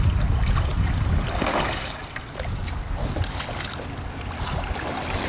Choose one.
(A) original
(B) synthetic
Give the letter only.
A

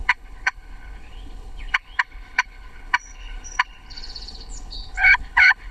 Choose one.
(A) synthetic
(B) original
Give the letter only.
A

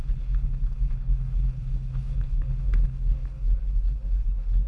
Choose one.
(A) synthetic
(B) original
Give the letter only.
A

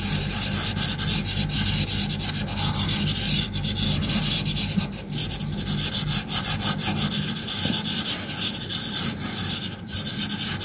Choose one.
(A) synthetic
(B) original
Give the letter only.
B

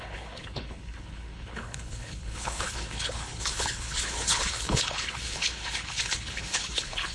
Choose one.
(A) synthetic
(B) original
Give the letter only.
A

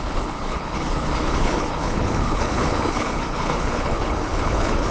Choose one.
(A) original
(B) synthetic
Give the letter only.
B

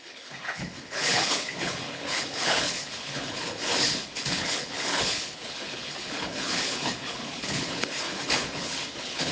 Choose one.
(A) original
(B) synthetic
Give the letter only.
B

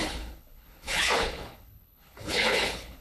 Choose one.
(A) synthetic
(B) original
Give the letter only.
A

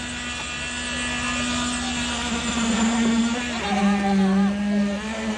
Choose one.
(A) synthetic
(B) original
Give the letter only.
B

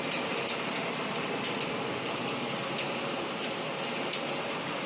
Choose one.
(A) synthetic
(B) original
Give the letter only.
B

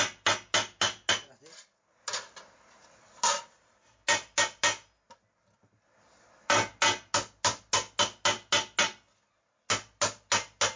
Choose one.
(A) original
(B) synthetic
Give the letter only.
A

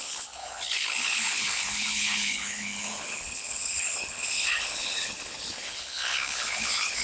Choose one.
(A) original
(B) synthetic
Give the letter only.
B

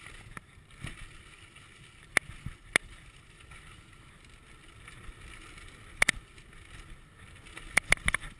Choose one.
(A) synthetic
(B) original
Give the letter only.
B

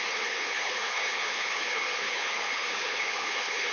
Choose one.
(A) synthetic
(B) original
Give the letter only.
A